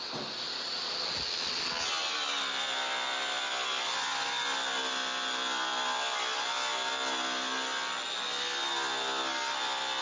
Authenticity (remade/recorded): recorded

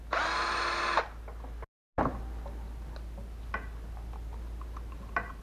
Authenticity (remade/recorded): recorded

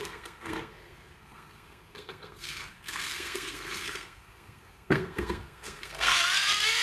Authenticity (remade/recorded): remade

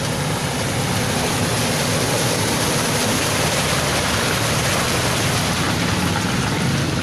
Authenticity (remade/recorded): recorded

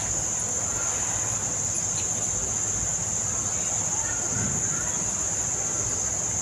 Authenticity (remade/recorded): recorded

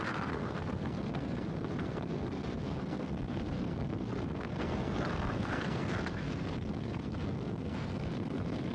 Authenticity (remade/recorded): remade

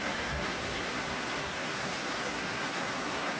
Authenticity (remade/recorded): remade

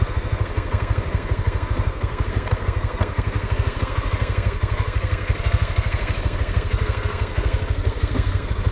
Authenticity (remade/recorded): remade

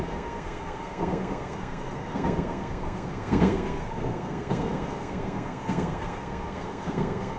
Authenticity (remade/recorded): remade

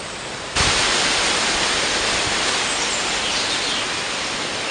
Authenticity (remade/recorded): recorded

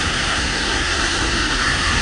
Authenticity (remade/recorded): remade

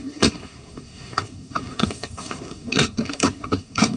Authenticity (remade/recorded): remade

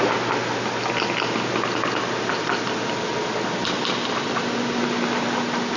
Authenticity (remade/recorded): recorded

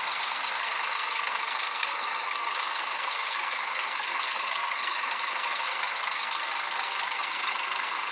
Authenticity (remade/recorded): remade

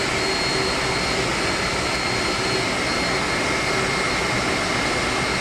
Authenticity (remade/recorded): recorded